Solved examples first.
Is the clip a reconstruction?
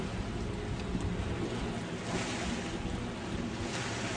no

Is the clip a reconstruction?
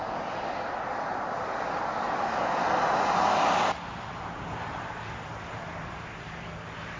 no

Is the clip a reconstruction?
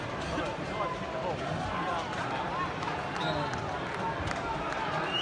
no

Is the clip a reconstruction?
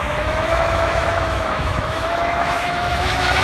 yes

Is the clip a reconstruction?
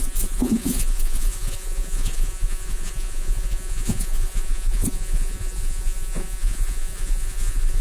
yes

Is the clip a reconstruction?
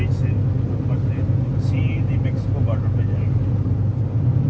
no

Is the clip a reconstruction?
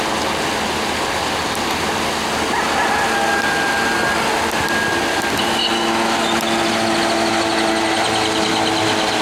no